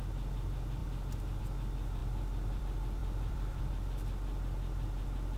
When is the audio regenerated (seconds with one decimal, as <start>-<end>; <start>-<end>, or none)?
3.0-3.7